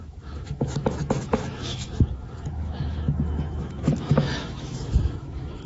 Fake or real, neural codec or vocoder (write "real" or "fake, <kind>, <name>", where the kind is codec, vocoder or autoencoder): fake, autoencoder, DAC-VAE